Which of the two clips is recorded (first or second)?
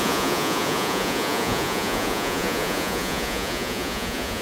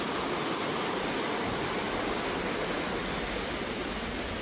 second